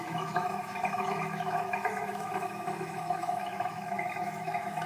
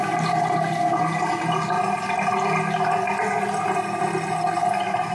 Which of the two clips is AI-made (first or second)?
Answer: first